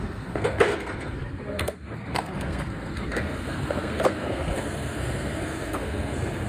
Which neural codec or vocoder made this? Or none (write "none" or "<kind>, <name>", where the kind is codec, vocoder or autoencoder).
codec, SNAC